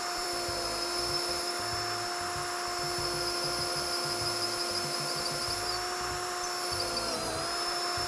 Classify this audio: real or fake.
fake